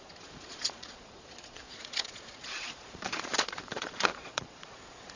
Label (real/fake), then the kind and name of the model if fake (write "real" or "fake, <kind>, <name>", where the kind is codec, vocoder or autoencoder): fake, vocoder, Vocos